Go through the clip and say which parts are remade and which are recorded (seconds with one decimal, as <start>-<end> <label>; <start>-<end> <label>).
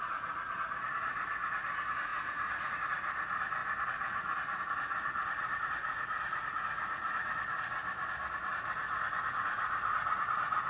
0.0-7.8 remade; 7.8-8.5 recorded; 8.5-10.7 remade